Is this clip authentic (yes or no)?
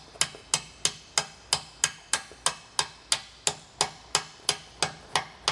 yes